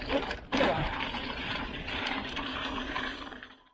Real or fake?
fake